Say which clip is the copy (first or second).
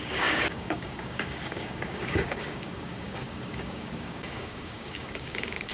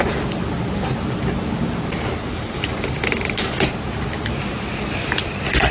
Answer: first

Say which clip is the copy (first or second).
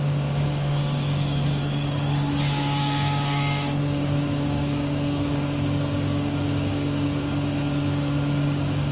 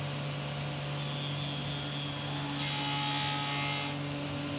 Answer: first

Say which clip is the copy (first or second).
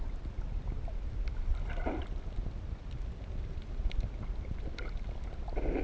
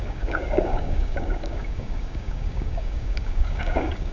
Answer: second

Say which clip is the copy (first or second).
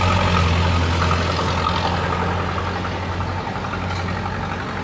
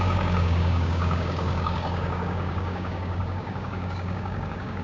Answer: second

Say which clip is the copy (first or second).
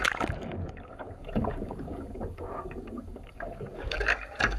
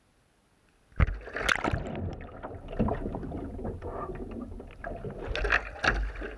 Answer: first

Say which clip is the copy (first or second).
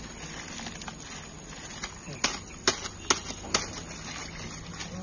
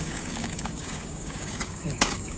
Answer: second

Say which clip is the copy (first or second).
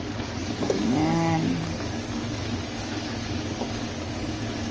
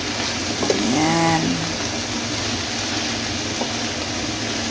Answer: first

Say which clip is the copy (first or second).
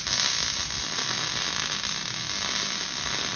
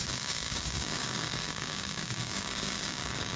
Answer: second